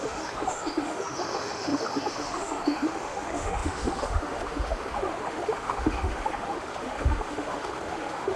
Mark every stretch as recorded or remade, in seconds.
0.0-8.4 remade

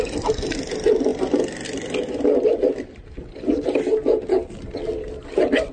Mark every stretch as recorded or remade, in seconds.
0.0-5.7 recorded

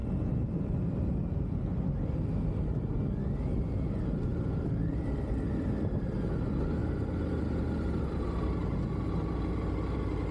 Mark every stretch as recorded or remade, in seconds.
0.0-1.1 remade; 1.1-4.3 recorded; 4.3-6.0 remade; 6.0-6.8 recorded; 6.8-8.5 remade; 8.5-10.3 recorded

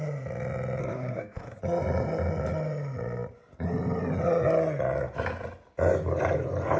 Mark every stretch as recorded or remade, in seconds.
0.0-0.8 recorded; 0.8-1.6 remade; 1.6-6.8 recorded

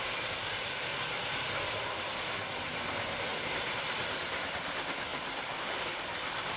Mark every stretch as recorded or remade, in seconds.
0.0-0.9 recorded; 0.9-2.1 remade; 2.1-3.3 recorded; 3.3-4.5 remade; 4.5-5.1 recorded; 5.1-6.6 remade